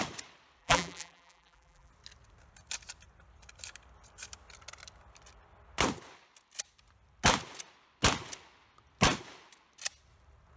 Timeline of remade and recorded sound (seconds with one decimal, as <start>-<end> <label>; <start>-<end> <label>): 0.0-0.6 recorded; 0.6-1.9 remade; 1.9-10.6 recorded